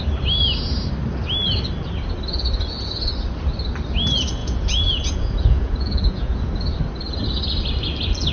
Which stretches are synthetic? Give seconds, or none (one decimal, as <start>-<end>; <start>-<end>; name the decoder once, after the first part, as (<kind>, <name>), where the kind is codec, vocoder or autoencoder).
4.4-6.5 (vocoder, Vocos)